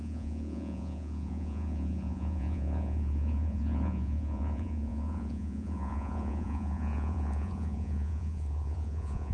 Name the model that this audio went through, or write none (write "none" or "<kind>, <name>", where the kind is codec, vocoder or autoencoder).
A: vocoder, Vocos